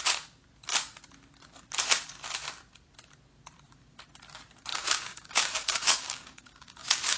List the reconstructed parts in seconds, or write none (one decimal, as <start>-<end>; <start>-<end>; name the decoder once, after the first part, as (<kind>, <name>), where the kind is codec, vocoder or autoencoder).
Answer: 4.7-7.2 (codec, DAC)